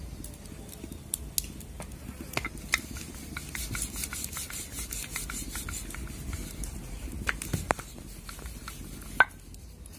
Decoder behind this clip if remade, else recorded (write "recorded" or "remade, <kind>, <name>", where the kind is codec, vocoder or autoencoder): recorded